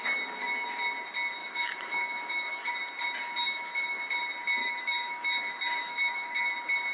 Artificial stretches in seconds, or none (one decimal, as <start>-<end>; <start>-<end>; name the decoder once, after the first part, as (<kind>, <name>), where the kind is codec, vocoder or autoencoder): 1.4-2.7 (autoencoder, DAC-VAE); 3.4-4.0; 4.6-6.5